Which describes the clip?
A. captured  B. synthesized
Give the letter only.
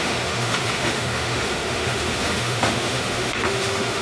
B